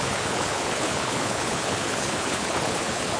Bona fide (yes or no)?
no